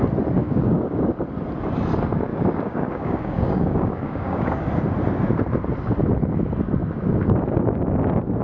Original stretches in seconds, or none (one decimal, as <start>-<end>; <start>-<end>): 0.0-0.4; 1.1-2.3; 4.6-8.4